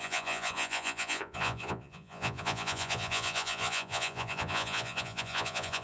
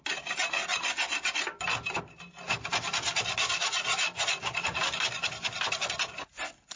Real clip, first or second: second